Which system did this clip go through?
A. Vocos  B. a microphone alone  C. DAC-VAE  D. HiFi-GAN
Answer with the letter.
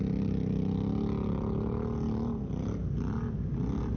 B